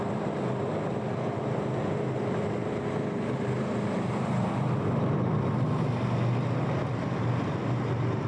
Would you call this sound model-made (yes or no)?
no